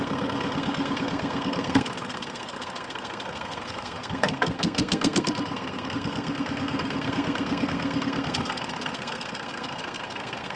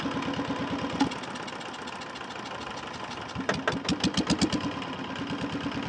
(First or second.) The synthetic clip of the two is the first